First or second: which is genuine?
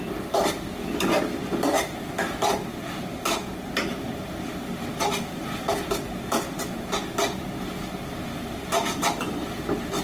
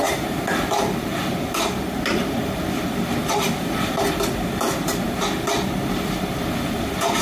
first